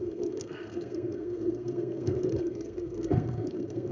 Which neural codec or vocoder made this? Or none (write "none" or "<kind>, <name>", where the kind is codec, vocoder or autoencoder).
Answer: codec, SNAC